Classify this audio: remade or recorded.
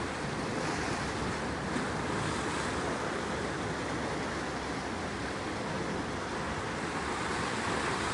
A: recorded